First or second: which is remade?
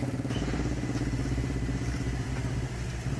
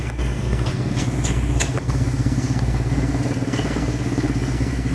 second